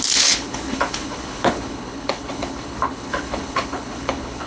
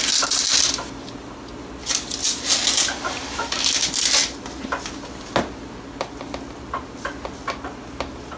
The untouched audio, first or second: second